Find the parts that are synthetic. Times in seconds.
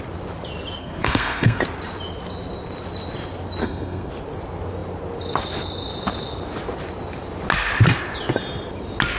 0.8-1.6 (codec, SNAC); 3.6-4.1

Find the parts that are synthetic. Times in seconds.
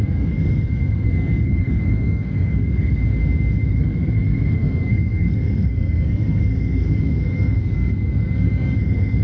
0.0-3.0 (codec, SNAC); 3.7-9.2